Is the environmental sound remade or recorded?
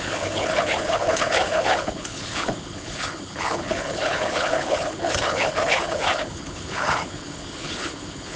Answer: remade